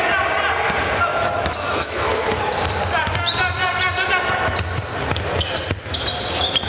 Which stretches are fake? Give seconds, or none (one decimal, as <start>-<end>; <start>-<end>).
1.1-2.4